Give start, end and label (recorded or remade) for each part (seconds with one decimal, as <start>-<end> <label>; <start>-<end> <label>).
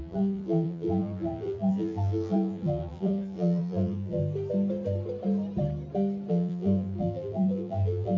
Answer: 0.0-4.2 remade; 4.2-6.3 recorded; 6.3-8.2 remade